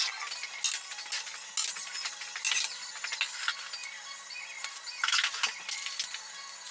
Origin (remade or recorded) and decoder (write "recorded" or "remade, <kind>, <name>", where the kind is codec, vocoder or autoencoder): recorded